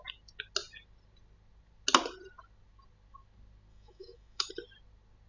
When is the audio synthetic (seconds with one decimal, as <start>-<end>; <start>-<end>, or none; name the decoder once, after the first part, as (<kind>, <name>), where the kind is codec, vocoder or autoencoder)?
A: 3.7-4.5 (autoencoder, DAC-VAE)